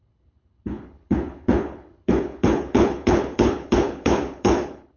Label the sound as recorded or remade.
remade